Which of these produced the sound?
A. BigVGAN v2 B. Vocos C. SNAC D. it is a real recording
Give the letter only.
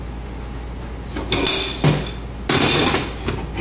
D